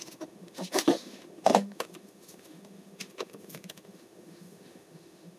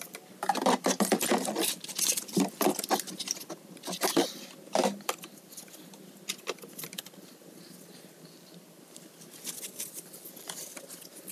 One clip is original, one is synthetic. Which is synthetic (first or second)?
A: first